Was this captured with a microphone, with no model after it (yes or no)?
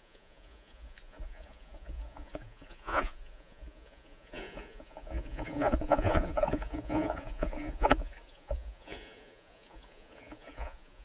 no